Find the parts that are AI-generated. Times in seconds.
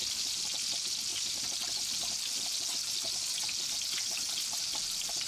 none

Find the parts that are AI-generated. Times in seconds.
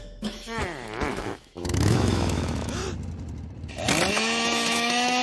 0.0-0.6; 1.1-2.8; 4.1-5.2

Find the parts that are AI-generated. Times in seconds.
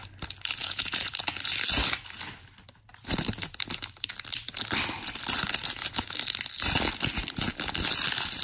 0.6-1.1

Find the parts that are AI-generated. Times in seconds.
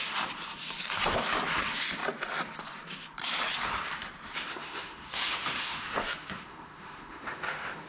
4.5-7.9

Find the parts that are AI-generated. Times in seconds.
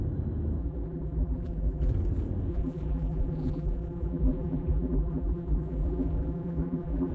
0.6-1.9; 2.5-7.1